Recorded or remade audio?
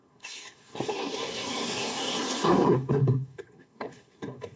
remade